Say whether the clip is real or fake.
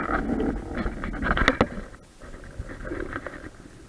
real